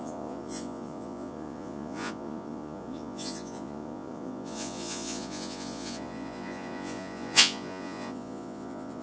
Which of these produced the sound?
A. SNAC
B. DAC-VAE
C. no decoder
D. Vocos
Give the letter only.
D